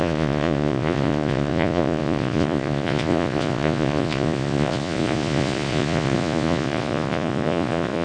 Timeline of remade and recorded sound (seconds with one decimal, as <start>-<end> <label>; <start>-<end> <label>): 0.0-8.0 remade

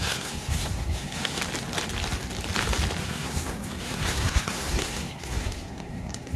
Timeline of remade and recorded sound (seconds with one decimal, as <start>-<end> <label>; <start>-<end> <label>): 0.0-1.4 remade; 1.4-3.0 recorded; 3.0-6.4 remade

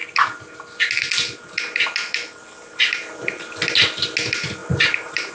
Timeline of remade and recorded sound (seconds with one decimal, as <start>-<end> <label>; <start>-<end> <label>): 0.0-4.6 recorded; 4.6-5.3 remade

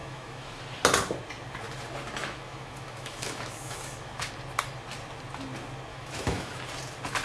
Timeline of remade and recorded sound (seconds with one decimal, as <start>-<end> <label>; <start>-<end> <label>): 0.0-0.6 remade; 0.6-2.2 recorded; 2.2-4.3 remade; 4.3-5.9 recorded; 5.9-6.6 remade; 6.6-7.2 recorded